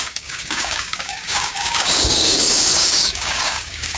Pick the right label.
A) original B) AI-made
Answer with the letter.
B